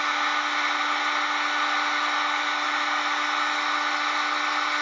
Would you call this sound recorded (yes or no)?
yes